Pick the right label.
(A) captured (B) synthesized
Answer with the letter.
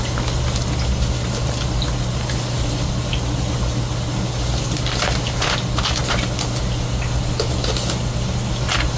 A